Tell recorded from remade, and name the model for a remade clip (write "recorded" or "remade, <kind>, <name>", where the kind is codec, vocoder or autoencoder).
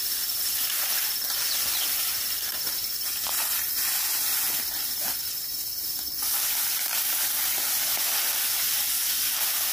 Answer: recorded